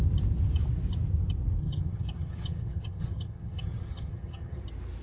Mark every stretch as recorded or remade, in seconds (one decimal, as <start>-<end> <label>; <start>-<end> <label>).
0.0-1.6 recorded; 1.6-4.6 remade; 4.6-5.0 recorded